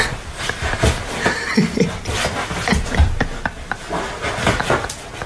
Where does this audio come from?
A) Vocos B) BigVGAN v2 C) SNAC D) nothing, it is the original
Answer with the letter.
D